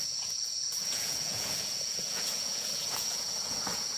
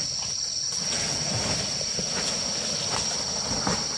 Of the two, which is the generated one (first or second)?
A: first